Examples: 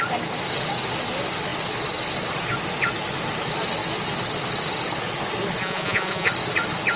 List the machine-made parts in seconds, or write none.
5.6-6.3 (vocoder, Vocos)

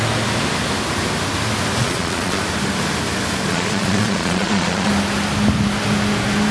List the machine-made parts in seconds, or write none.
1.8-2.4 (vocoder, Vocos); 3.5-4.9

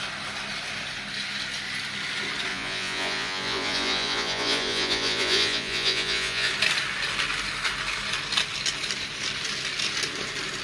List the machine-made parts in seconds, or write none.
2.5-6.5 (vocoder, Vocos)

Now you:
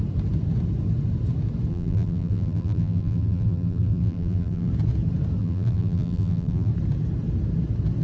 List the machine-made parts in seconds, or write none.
1.7-4.7 (vocoder, BigVGAN v2); 5.4-6.7

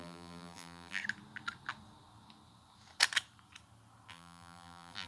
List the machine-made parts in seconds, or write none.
0.0-1.0 (vocoder, BigVGAN v2); 4.1-5.1

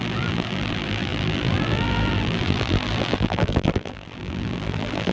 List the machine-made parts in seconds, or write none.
0.0-5.1 (vocoder, BigVGAN v2)